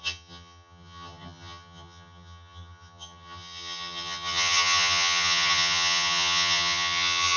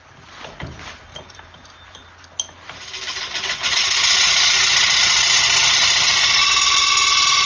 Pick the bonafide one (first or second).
second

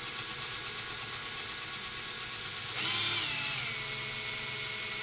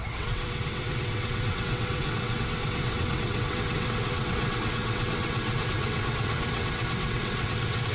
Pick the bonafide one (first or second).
first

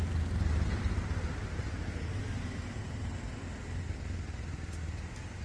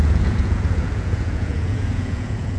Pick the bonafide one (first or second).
first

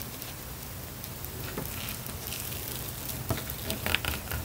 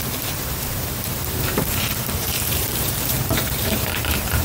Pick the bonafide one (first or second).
first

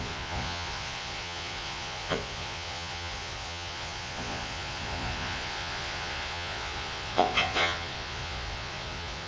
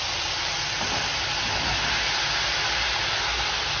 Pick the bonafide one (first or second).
second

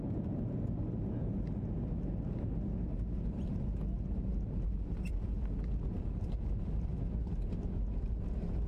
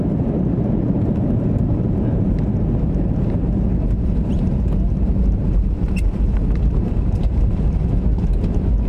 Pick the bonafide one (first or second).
first